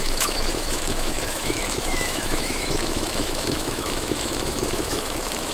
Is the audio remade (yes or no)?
yes